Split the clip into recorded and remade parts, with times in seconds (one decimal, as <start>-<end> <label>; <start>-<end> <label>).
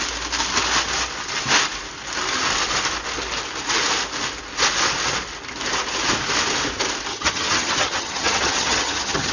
0.0-7.1 recorded; 7.1-9.3 remade